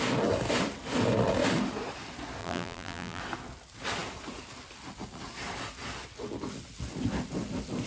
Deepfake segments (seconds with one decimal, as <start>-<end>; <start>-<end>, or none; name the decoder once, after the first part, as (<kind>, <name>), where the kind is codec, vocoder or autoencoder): 2.4-3.2 (vocoder, BigVGAN v2)